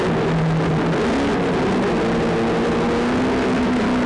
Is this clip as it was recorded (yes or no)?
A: yes